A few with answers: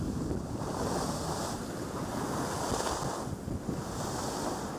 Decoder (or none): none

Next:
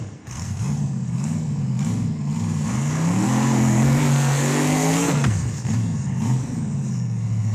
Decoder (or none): codec, SNAC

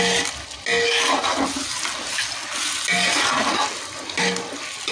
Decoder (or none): none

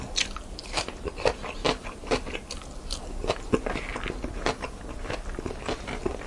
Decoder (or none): none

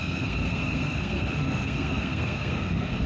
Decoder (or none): codec, SNAC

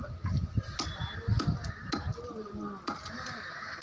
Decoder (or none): none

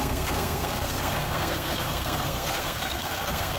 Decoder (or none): codec, SNAC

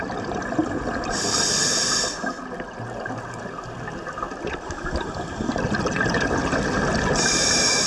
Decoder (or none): none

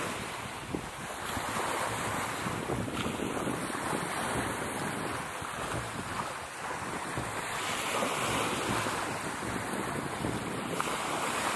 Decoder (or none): none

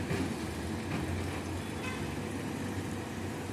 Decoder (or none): none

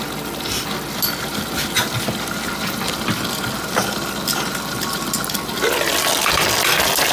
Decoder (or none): none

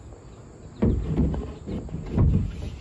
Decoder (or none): none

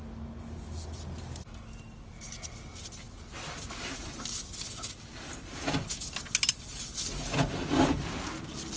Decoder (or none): none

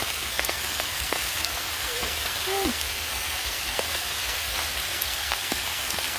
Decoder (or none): codec, SNAC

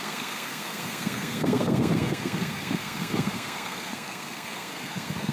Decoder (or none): codec, SNAC